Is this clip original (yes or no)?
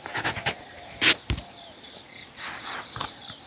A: yes